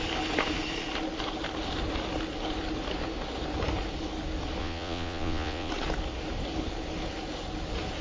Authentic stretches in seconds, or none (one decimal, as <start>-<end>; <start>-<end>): 0.0-4.6; 5.7-8.0